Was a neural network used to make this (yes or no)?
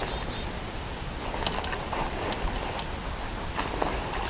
no